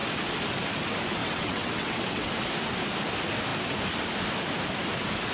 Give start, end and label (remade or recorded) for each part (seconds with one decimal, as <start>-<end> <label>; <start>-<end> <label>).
0.0-1.2 recorded; 1.2-2.3 remade; 2.3-5.3 recorded